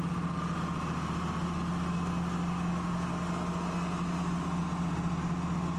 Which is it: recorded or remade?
recorded